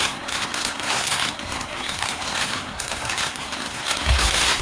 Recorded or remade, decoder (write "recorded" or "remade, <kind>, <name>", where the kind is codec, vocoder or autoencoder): remade, codec, SNAC